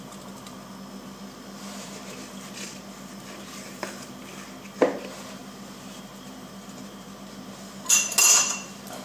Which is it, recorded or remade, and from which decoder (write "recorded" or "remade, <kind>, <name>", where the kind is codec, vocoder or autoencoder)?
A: recorded